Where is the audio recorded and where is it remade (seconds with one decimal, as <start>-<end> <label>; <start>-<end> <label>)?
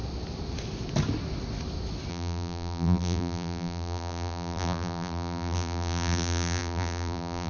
0.0-2.1 recorded; 2.1-7.5 remade